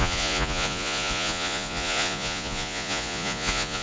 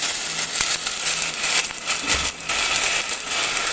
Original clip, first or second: second